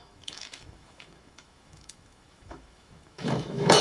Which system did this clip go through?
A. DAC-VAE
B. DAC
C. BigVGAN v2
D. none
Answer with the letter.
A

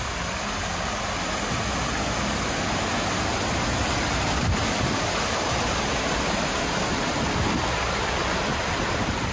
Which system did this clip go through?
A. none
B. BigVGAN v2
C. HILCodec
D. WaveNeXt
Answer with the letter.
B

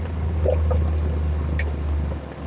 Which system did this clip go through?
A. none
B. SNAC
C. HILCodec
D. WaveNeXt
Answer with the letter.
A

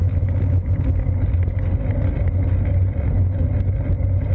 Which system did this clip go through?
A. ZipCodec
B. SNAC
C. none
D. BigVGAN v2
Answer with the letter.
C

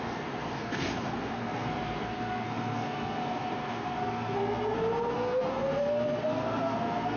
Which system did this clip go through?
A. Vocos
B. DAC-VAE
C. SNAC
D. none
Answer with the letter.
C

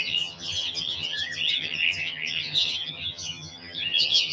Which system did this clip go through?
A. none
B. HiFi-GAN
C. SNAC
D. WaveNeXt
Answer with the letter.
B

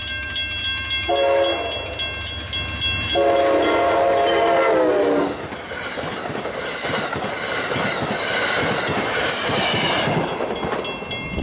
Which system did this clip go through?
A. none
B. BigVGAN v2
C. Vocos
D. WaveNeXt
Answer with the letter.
A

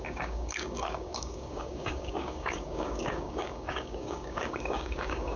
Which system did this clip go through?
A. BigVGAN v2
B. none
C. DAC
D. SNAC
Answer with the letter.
C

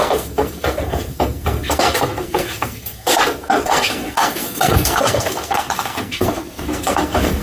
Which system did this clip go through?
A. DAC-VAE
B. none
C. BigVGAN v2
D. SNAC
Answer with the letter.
D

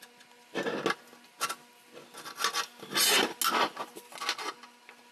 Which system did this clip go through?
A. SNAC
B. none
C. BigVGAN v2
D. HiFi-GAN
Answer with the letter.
B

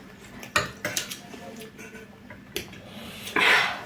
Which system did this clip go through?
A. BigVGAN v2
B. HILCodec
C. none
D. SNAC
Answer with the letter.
C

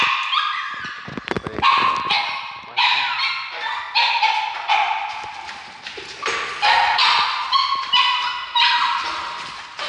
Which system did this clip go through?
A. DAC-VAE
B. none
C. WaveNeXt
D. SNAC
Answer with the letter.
B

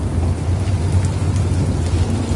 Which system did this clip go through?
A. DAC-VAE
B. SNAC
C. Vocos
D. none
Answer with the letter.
D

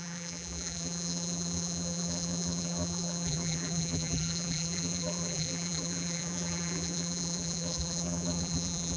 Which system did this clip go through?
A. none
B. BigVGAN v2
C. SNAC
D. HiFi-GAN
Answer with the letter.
B